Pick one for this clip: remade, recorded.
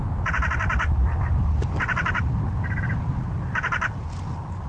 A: recorded